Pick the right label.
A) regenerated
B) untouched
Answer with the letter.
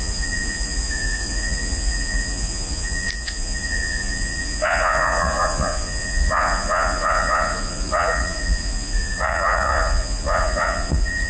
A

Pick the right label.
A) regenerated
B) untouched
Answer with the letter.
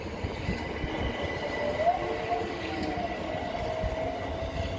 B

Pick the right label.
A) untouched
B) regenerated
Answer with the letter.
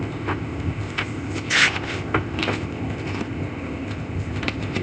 B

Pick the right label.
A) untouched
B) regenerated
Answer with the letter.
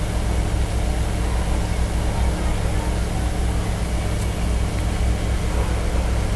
A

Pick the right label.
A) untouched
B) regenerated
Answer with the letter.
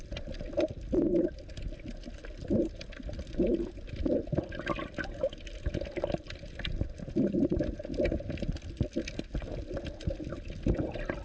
A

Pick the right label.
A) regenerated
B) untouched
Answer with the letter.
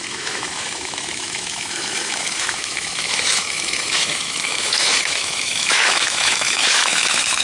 A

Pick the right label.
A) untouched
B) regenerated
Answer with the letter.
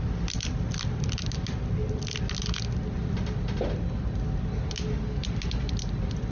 A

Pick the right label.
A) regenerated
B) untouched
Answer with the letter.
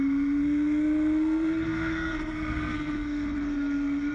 A